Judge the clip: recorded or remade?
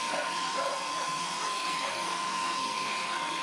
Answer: remade